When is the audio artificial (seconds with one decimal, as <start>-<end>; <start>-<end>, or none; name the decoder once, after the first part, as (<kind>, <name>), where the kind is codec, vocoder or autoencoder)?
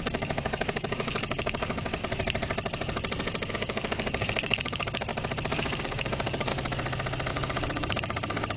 0.0-2.0 (codec, DAC); 3.5-5.1; 5.8-6.5; 7.3-8.6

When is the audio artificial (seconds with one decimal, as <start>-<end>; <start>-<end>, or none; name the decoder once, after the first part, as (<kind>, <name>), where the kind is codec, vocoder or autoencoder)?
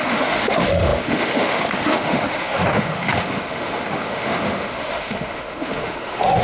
0.0-6.4 (autoencoder, DAC-VAE)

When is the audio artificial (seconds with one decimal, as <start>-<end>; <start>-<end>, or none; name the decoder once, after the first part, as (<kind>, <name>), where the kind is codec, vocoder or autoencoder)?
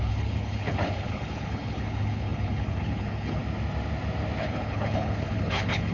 0.0-3.4 (codec, HILCodec); 4.4-5.9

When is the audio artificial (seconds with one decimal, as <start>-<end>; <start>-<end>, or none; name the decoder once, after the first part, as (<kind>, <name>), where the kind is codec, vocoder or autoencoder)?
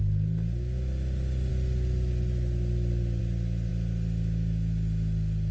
none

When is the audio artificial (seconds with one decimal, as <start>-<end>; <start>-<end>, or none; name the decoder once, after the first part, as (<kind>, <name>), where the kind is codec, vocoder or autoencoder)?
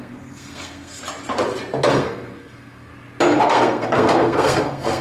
0.0-1.0 (codec, SNAC); 1.9-2.9; 3.4-5.0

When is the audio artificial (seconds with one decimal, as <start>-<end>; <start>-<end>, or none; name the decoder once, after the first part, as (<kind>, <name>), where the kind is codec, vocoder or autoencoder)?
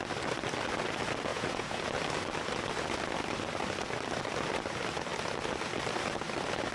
1.3-1.8 (vocoder, Vocos)